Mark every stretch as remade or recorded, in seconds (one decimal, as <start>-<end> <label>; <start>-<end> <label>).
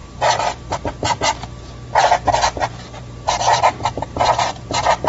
0.0-1.2 remade; 1.2-2.6 recorded; 2.6-5.1 remade